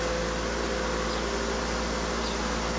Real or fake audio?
real